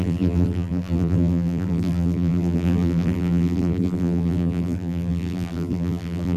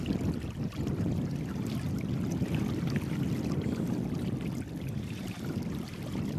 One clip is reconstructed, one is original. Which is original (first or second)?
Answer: second